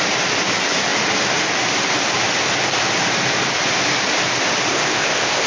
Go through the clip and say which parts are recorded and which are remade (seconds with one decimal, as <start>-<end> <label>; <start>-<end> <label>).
0.0-4.7 recorded; 4.7-5.5 remade